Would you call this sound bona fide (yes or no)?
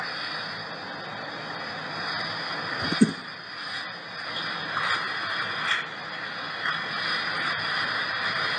yes